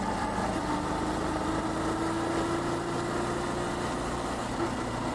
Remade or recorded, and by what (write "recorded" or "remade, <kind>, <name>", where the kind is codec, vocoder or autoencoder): recorded